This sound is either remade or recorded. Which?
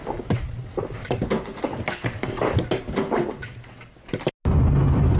recorded